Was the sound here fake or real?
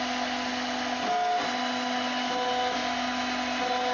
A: real